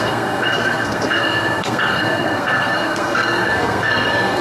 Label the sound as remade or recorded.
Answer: remade